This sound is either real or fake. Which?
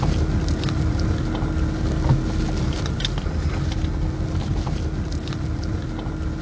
real